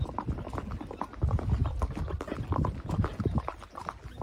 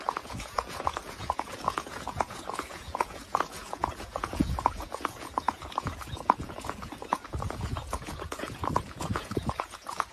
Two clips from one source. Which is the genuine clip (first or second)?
first